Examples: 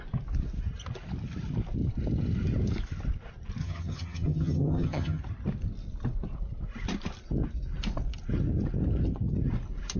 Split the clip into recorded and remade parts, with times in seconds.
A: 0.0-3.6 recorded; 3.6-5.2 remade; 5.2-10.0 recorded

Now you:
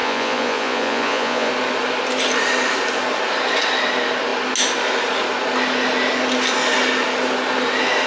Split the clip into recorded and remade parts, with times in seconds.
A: 0.0-1.5 remade; 1.5-8.1 recorded

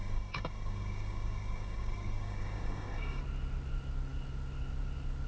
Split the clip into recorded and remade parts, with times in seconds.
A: 0.0-3.2 remade; 3.2-5.3 recorded